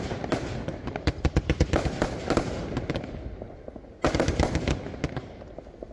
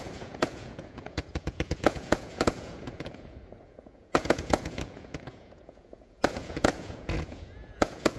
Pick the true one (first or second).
first